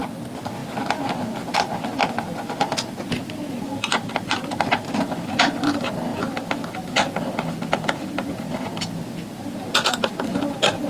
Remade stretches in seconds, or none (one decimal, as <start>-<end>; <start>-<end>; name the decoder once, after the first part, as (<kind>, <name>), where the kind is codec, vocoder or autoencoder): none